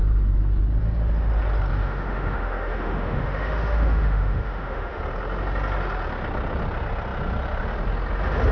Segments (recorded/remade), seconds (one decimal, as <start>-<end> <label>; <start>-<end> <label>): 0.0-1.7 recorded; 1.7-5.0 remade; 5.0-8.5 recorded